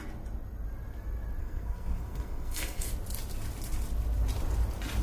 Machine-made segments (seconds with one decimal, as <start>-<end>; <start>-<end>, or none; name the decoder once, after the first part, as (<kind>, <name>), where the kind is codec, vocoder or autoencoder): 1.4-2.9 (codec, SNAC)